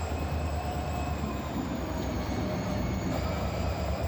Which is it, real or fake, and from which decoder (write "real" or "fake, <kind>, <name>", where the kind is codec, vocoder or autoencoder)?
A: fake, vocoder, BigVGAN v2